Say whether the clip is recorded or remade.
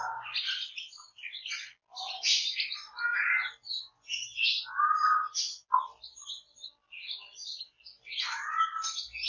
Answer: recorded